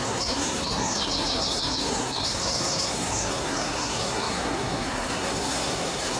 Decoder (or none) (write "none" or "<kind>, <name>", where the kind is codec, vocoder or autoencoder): codec, SNAC